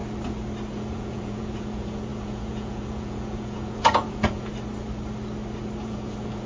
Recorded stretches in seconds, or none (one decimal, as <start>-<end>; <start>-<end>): 0.0-0.7; 4.5-5.8